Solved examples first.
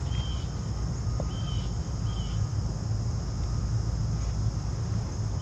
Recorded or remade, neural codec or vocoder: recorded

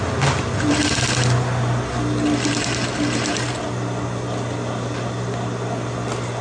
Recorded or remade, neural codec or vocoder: recorded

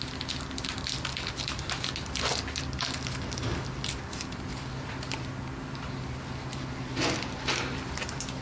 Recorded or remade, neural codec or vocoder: recorded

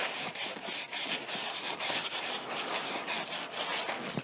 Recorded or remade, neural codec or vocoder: recorded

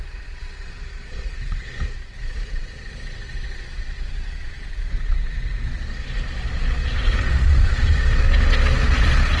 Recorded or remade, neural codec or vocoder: remade, vocoder, Vocos